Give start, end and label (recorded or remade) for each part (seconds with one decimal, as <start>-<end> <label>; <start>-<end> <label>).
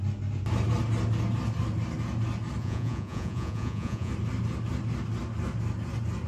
0.0-2.6 recorded; 2.6-4.1 remade; 4.1-6.3 recorded